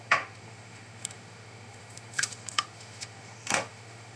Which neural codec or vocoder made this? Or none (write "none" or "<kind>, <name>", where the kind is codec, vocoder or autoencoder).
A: autoencoder, DAC-VAE